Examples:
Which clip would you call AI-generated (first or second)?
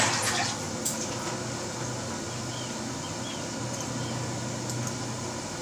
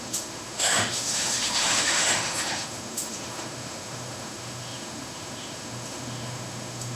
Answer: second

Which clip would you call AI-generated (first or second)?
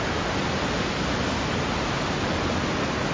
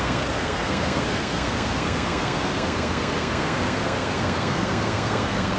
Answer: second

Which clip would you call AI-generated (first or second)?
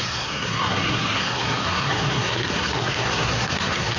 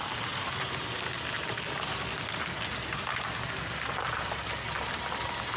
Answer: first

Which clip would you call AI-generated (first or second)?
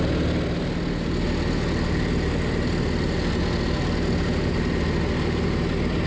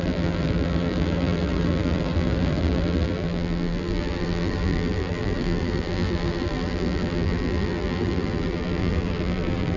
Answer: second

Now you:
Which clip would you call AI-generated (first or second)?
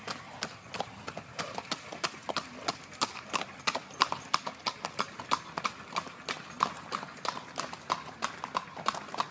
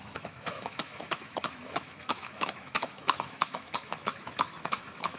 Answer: second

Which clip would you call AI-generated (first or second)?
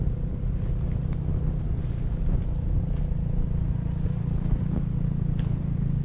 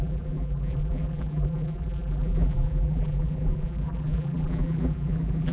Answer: second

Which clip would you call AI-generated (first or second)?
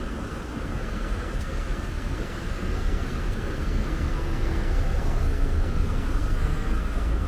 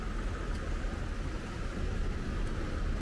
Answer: first